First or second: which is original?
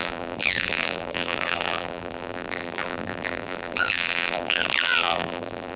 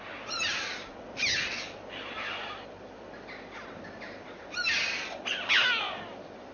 second